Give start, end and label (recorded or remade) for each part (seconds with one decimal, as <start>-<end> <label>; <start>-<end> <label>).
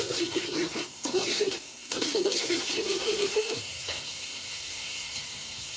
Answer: 0.0-5.8 remade